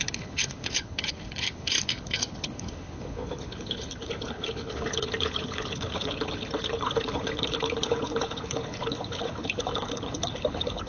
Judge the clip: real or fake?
fake